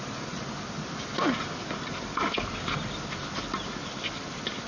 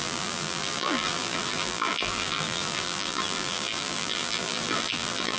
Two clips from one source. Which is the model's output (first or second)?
second